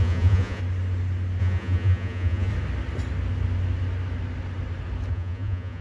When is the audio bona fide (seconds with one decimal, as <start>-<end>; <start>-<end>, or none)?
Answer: 0.6-1.4; 2.5-5.1